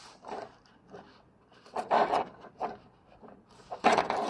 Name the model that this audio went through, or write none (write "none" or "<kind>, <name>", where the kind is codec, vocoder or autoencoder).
none